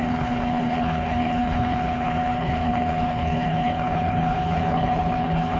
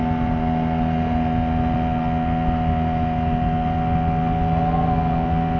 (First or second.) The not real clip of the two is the first